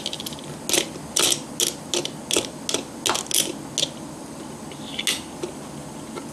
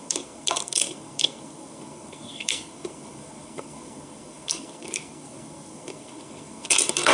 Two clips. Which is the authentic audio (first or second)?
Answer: first